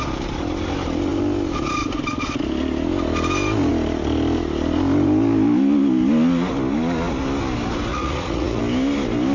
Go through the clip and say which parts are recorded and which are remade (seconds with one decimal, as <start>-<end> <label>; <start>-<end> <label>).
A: 0.0-7.9 recorded; 7.9-8.6 remade; 8.6-9.3 recorded